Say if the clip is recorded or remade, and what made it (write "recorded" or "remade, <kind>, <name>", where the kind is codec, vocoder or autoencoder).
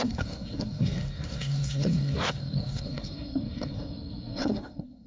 remade, codec, SNAC